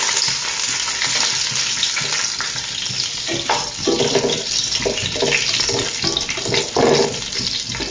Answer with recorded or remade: recorded